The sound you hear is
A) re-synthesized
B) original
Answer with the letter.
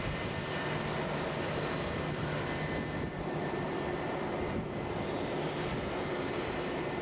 B